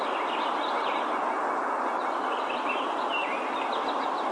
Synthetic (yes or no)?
no